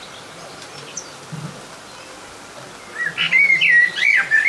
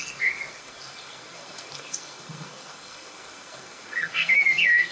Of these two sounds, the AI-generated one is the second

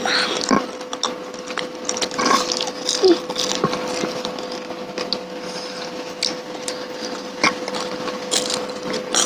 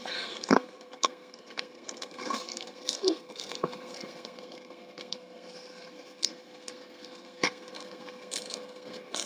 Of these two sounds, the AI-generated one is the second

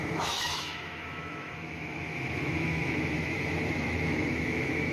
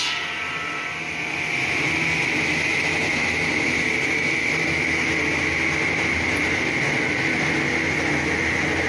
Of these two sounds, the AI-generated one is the first